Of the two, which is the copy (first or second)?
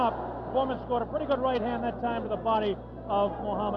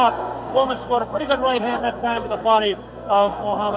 second